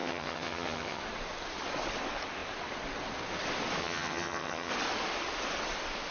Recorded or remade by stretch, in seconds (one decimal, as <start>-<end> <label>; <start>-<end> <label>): 0.0-1.0 remade; 1.0-3.8 recorded; 3.8-4.7 remade; 4.7-6.1 recorded